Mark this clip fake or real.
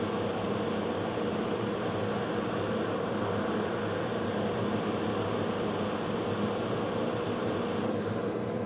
real